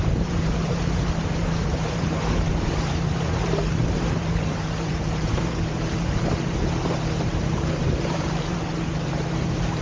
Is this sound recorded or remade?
remade